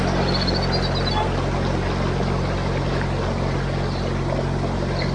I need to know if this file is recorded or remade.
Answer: recorded